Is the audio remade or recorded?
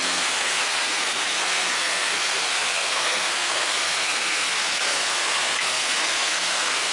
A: remade